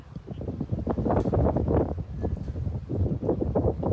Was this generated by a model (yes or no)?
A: no